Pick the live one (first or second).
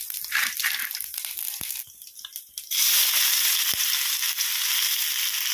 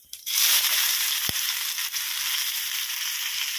first